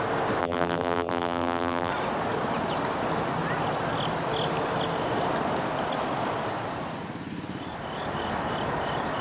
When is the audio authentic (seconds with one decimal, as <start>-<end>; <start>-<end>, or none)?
0.0-0.4; 1.9-9.2